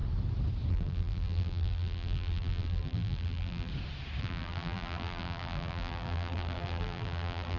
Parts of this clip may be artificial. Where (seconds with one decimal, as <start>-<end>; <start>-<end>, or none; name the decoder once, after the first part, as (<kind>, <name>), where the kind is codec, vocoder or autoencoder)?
0.7-3.7 (vocoder, BigVGAN v2); 4.2-7.6

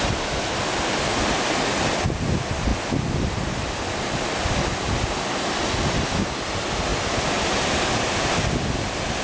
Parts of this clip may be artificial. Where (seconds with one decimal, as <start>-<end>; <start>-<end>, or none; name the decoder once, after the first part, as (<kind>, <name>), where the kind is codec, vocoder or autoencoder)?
none

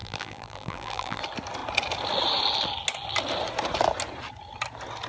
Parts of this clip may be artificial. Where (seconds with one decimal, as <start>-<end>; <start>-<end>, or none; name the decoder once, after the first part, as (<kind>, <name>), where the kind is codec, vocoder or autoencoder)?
0.0-1.2 (vocoder, BigVGAN v2)

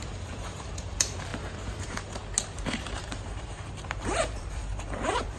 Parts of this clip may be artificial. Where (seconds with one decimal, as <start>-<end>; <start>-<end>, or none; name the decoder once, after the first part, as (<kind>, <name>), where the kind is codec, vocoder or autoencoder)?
0.0-2.2 (vocoder, BigVGAN v2); 3.0-5.4

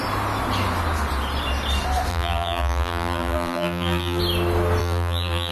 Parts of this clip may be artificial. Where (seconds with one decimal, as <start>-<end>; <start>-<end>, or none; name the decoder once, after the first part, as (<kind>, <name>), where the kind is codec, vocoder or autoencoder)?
2.1-4.2 (vocoder, BigVGAN v2); 4.8-5.5

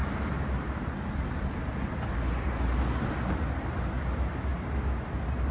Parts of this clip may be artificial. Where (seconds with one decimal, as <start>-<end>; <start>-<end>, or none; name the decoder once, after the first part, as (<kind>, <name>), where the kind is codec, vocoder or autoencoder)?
none

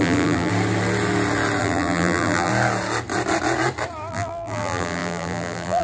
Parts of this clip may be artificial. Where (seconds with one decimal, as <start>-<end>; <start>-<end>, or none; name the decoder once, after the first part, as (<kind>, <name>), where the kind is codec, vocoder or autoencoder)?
0.0-0.5 (vocoder, BigVGAN v2); 1.6-2.5; 4.1-5.8